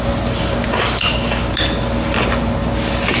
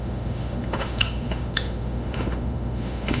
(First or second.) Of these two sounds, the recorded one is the first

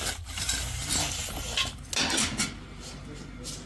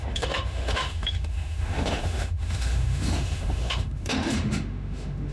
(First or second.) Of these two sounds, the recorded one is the first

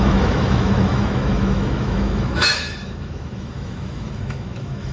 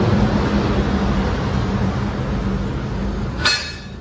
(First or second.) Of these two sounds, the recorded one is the second